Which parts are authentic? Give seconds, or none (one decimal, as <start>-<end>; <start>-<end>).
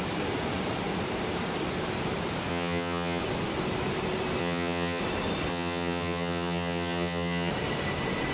0.0-2.5; 3.2-4.4; 5.0-5.5; 7.5-8.3